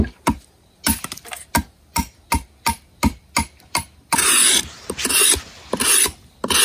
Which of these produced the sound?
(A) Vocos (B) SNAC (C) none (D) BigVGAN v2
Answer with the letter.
C